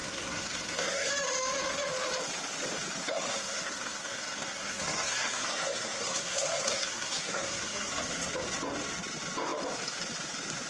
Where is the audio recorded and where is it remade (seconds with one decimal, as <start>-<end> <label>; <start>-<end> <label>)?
0.0-1.1 remade; 1.1-3.0 recorded; 3.0-7.9 remade; 7.9-10.7 recorded